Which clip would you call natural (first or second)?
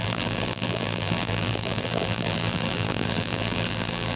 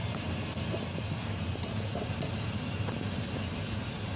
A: second